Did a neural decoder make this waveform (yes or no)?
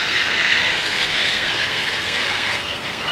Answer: yes